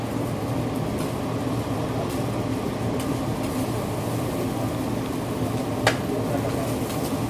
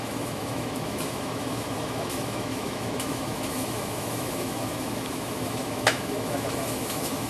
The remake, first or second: second